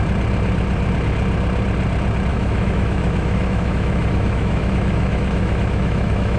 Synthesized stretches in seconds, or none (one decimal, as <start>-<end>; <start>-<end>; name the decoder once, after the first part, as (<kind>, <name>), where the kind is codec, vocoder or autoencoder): 2.3-6.4 (autoencoder, DAC-VAE)